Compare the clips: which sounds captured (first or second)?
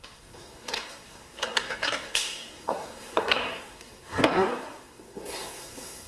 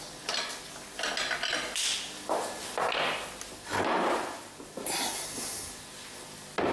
second